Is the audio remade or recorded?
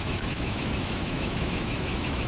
remade